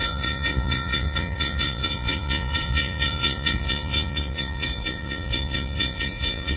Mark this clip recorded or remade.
remade